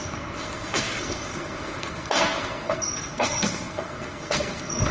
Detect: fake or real fake